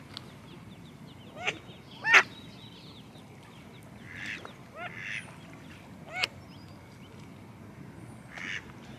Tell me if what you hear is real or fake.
real